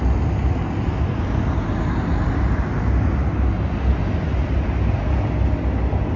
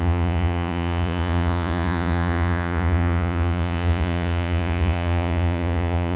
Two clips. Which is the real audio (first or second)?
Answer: first